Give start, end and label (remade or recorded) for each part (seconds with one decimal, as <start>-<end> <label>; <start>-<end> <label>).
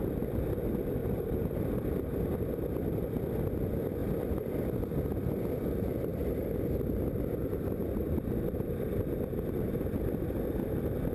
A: 0.0-1.0 recorded; 1.0-2.2 remade; 2.2-6.1 recorded; 6.1-9.1 remade; 9.1-11.1 recorded